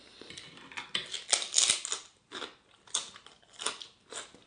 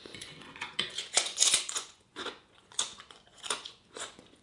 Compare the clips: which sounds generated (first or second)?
second